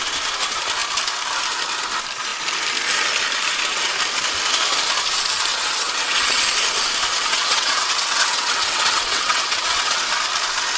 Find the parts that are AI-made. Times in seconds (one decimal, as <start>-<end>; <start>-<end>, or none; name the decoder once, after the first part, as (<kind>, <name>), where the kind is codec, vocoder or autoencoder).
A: 5.5-6.4 (vocoder, WaveNeXt); 7.1-10.0

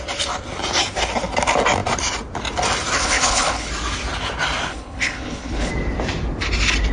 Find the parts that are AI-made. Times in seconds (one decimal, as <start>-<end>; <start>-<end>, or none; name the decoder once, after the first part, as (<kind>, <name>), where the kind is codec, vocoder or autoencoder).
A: 3.0-3.7 (codec, HILCodec); 4.7-5.7

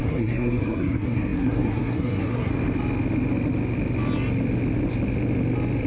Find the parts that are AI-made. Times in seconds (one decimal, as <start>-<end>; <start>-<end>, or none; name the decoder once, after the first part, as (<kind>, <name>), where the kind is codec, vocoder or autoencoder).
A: 0.0-2.5 (codec, SNAC)

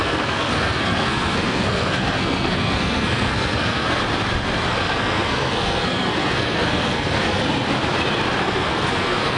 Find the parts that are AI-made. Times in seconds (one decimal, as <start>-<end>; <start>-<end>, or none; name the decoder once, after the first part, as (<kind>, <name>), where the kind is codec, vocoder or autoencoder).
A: 0.0-4.0 (codec, SNAC); 4.7-7.4; 8.4-9.4

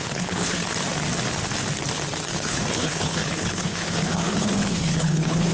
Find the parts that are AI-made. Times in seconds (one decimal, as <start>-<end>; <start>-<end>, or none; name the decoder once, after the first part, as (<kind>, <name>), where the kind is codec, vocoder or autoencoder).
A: 0.0-0.6 (codec, HILCodec); 2.3-5.5

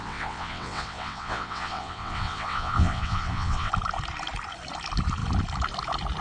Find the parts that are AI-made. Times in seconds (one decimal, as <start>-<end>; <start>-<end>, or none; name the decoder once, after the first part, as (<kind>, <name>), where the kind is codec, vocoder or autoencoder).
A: 0.0-3.7 (vocoder, WaveNeXt)

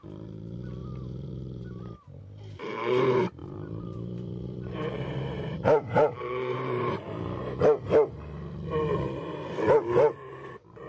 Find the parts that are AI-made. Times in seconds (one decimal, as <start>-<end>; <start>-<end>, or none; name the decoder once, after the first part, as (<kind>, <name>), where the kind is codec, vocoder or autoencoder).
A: 0.8-2.2 (vocoder, BigVGAN v2); 3.4-6.8

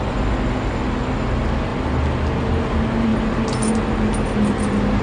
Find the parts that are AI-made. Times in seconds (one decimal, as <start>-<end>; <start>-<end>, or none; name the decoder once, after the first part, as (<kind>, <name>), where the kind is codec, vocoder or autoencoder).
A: none